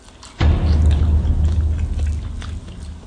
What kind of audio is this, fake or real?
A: real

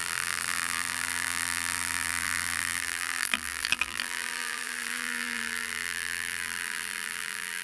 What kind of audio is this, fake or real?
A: fake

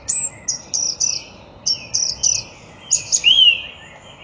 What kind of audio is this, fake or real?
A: real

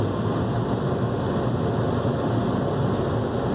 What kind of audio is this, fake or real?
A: real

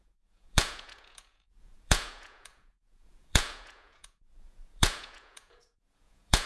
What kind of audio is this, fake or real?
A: fake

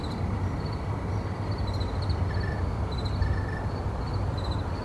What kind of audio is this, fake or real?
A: real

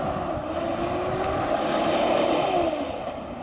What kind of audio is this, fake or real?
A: real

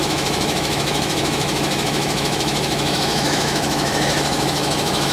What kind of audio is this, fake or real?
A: fake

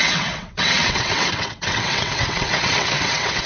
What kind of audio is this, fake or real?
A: fake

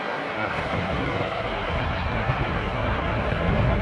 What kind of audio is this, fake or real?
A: fake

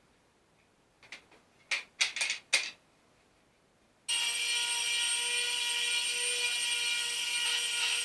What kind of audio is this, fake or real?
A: real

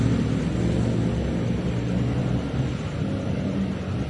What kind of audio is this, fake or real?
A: real